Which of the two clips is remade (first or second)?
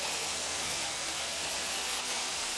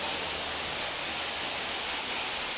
first